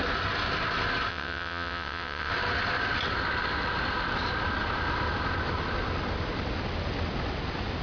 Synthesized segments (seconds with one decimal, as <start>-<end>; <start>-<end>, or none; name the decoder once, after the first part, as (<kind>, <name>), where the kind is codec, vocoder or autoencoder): 1.1-2.3 (vocoder, WaveNeXt)